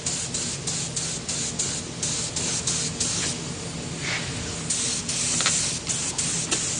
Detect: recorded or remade recorded